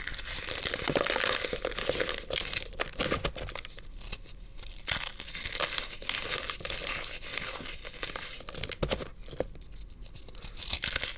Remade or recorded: recorded